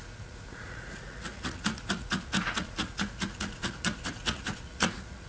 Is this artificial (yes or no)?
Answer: yes